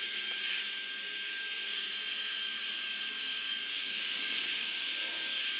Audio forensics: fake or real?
fake